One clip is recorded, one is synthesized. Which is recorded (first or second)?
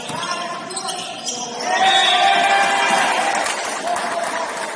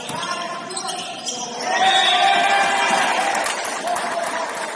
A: first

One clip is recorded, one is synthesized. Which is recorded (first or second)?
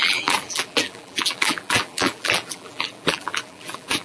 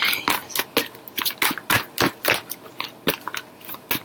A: second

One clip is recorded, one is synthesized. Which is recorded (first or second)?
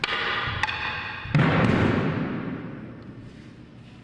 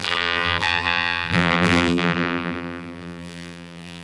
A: first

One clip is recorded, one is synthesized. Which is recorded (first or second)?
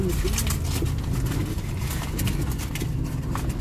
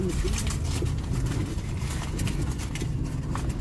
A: first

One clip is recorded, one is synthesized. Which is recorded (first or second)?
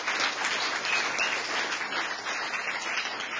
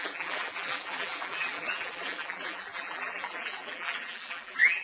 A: first